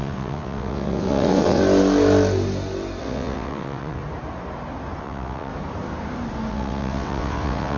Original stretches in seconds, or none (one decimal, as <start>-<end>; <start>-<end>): 1.6-3.0; 4.0-5.0; 5.5-6.5

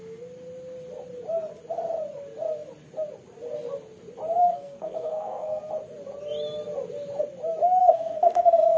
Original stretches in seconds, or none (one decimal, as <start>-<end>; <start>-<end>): 0.0-4.4; 5.6-7.8

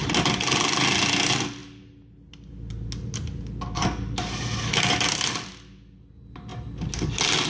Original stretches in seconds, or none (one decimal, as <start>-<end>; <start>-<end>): 0.0-7.5

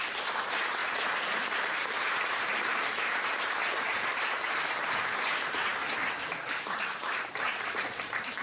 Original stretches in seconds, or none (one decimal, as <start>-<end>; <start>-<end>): none

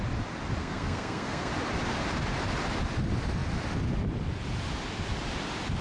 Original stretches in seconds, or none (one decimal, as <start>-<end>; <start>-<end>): 0.0-0.6; 1.5-5.8

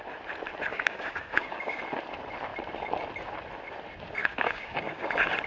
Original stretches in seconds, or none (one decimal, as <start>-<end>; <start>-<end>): 0.0-0.7; 1.8-4.2; 5.1-5.5

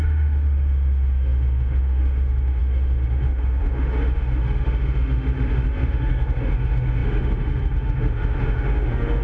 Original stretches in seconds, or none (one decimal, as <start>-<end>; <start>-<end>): none

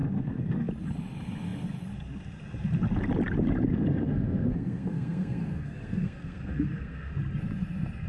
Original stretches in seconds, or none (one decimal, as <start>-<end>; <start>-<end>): 0.7-3.7; 7.1-8.1